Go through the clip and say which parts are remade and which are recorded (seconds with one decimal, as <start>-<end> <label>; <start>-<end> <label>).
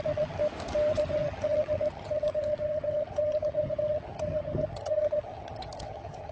0.0-0.4 remade; 0.4-0.9 recorded; 0.9-6.3 remade